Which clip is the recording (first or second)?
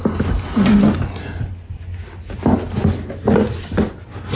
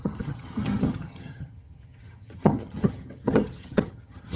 first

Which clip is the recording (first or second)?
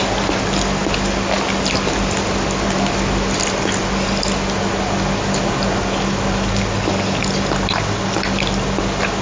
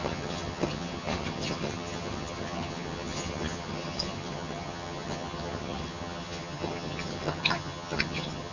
first